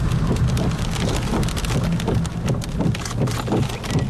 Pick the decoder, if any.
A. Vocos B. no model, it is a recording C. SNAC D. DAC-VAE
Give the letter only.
B